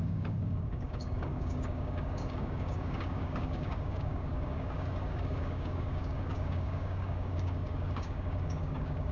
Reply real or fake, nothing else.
fake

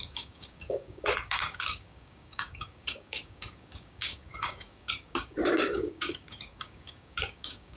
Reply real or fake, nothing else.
fake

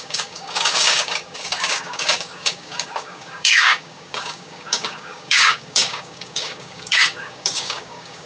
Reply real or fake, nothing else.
fake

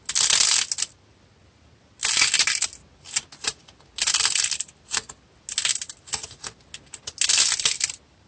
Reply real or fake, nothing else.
real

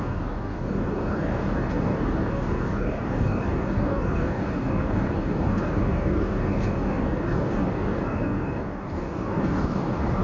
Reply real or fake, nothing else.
fake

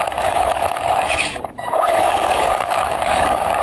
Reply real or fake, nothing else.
fake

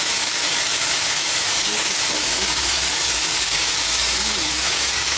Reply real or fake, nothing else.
fake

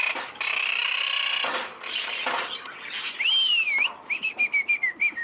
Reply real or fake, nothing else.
real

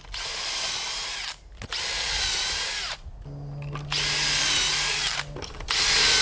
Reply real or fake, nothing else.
real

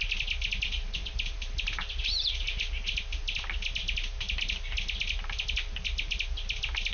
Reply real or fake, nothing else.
real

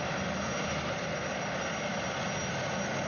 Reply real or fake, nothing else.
real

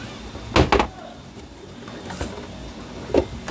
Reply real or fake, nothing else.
real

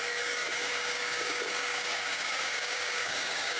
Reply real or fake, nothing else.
fake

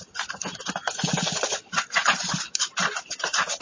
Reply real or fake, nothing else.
real